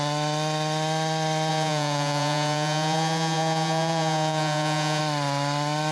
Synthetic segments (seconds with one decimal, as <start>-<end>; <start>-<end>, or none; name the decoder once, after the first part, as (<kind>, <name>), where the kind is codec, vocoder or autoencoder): 1.5-5.0 (vocoder, Vocos)